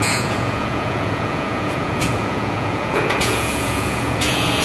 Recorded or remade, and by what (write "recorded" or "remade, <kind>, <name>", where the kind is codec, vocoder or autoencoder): remade, vocoder, Vocos